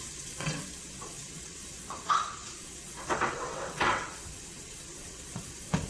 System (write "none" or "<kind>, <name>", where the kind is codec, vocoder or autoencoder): vocoder, WaveNeXt